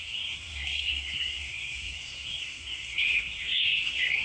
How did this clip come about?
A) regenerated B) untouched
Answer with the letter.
A